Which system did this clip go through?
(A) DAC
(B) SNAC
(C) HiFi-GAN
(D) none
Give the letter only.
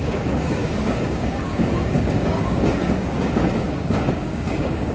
A